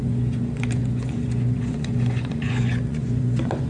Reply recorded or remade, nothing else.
remade